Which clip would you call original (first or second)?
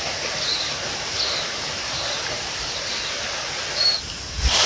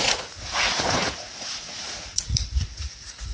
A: first